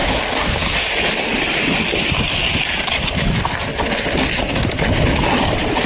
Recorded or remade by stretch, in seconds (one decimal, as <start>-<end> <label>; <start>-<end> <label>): 0.0-1.4 recorded; 1.4-3.7 remade; 3.7-5.5 recorded; 5.5-5.9 remade